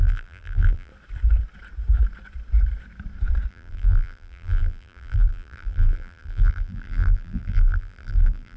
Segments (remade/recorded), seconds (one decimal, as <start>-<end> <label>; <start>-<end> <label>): 0.0-0.9 remade; 0.9-3.5 recorded; 3.5-8.6 remade